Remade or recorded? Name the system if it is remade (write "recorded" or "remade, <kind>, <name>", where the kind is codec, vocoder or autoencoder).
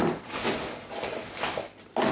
recorded